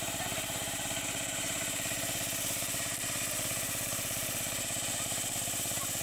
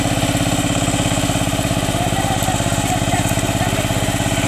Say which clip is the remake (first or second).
first